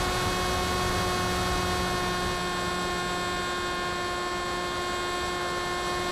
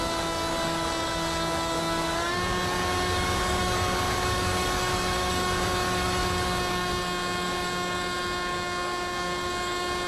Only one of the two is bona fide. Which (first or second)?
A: first